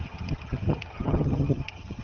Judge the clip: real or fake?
fake